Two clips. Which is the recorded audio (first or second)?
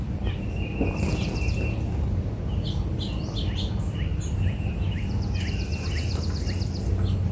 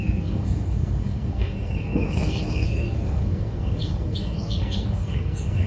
first